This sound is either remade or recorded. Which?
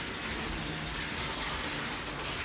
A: recorded